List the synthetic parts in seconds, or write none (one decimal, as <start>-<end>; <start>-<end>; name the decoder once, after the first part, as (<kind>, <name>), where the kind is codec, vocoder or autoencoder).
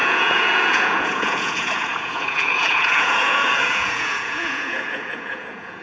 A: 0.0-5.8 (vocoder, Vocos)